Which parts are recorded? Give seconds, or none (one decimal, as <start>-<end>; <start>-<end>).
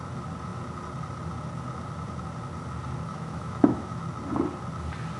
0.0-3.1; 4.0-5.2